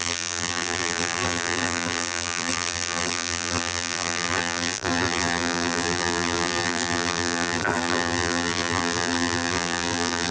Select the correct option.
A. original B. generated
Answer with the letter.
B